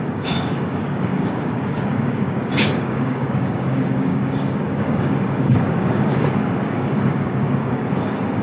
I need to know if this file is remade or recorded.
remade